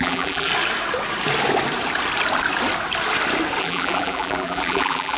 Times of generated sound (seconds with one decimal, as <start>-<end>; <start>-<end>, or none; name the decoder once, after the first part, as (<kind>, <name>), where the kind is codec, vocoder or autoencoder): 0.0-0.5 (vocoder, BigVGAN v2); 3.6-5.2